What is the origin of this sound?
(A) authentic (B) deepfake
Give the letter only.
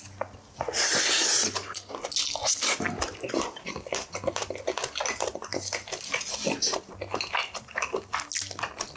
A